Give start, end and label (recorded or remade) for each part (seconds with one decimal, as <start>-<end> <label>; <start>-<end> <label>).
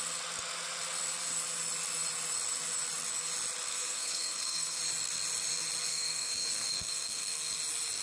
0.0-3.7 recorded; 3.7-4.8 remade; 4.8-5.9 recorded; 5.9-7.5 remade; 7.5-8.0 recorded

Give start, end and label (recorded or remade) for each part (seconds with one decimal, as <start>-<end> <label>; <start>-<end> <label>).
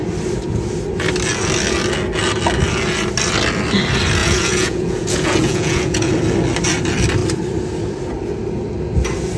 0.0-4.2 recorded; 4.2-6.1 remade; 6.1-9.4 recorded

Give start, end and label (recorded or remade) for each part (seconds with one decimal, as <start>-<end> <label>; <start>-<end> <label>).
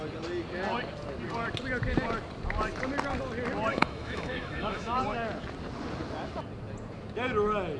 0.0-3.7 recorded; 3.7-5.0 remade; 5.0-7.8 recorded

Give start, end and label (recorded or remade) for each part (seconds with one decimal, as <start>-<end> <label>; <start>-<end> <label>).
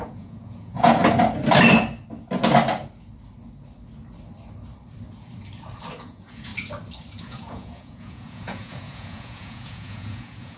0.0-1.0 remade; 1.0-6.0 recorded; 6.0-6.5 remade; 6.5-7.2 recorded; 7.2-10.6 remade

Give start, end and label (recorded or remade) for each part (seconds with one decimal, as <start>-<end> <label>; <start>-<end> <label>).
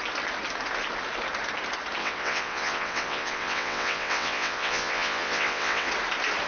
0.0-2.0 recorded; 2.0-5.9 remade; 5.9-6.5 recorded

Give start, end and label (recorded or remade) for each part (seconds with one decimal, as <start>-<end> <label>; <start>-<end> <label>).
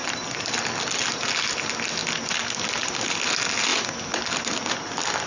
0.0-5.3 recorded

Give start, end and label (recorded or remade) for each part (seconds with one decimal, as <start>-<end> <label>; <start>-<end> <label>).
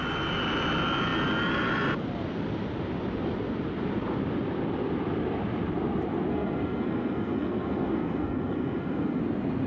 0.0-6.3 recorded; 6.3-9.2 remade; 9.2-9.7 recorded